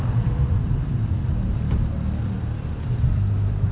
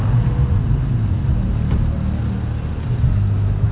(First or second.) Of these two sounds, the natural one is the second